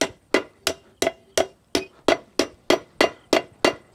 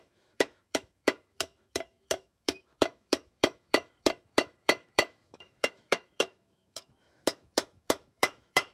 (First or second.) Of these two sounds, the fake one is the second